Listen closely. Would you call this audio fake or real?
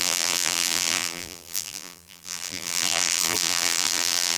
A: fake